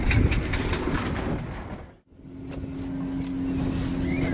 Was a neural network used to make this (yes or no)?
no